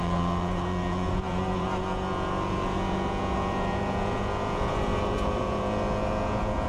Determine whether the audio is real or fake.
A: fake